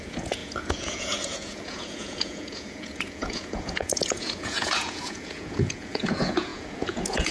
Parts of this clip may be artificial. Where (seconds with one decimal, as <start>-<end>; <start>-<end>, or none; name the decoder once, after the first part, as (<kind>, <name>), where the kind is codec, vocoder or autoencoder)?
0.0-7.3 (vocoder, Vocos)